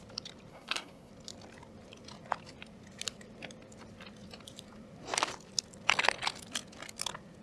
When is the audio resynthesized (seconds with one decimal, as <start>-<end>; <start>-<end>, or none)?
0.5-1.1